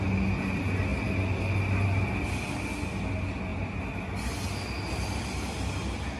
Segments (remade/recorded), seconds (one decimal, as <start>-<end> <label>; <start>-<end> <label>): 0.0-6.2 recorded